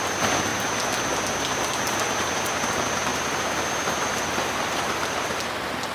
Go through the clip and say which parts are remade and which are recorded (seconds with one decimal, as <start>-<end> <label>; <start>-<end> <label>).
0.0-3.1 recorded; 3.1-4.2 remade; 4.2-5.9 recorded